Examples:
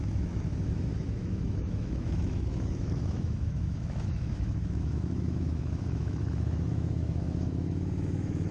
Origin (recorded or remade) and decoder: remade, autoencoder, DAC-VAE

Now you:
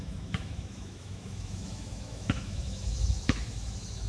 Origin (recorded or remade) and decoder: remade, autoencoder, DAC-VAE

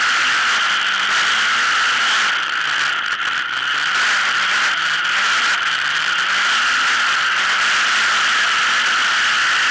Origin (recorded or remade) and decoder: recorded